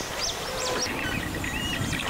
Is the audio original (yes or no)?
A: yes